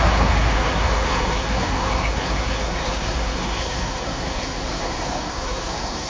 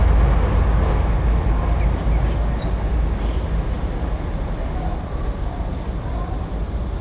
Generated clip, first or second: first